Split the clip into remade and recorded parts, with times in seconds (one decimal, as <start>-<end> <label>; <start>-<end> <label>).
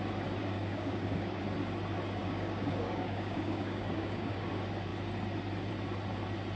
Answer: 0.0-0.4 recorded; 0.4-1.4 remade; 1.4-2.2 recorded; 2.2-4.5 remade; 4.5-6.6 recorded